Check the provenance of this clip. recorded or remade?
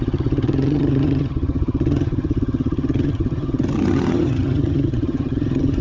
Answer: remade